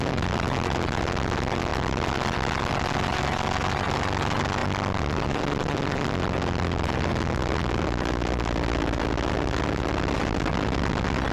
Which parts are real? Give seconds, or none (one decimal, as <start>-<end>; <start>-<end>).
0.0-4.6; 7.1-11.3